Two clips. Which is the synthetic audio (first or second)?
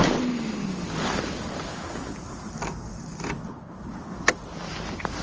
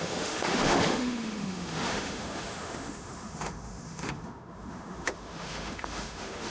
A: second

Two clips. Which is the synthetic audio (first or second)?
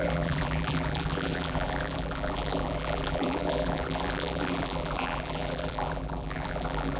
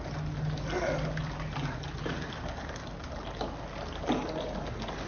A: first